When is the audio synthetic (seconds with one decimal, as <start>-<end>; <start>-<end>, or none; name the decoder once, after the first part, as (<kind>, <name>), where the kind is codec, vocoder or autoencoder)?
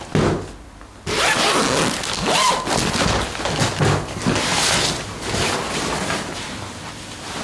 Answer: none